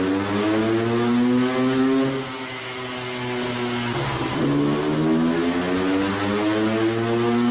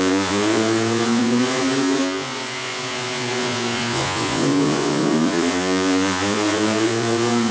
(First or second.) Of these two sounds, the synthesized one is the second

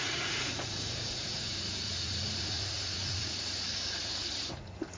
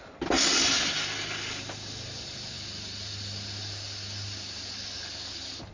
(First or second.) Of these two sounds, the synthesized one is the first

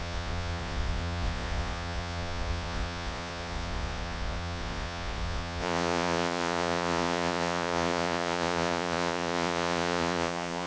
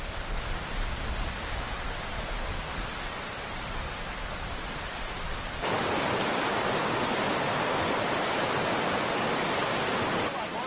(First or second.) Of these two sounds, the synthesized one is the first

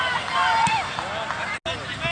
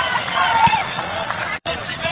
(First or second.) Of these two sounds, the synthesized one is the second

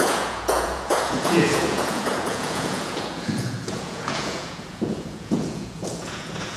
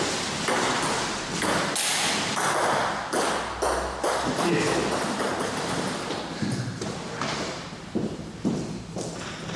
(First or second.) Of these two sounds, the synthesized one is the first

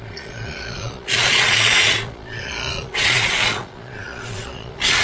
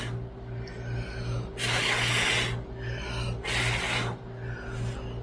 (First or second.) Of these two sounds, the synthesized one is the first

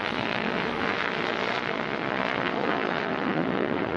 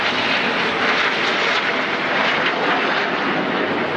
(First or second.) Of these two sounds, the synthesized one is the first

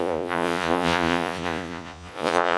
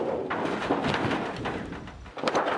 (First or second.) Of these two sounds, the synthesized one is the first